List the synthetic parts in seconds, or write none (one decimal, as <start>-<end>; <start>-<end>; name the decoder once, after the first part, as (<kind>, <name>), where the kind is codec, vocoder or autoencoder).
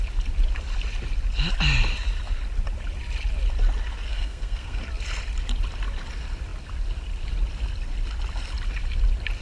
4.1-4.8 (codec, SNAC)